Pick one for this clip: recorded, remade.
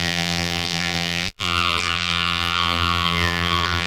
remade